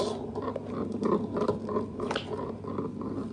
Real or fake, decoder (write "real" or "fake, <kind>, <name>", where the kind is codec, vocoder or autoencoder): real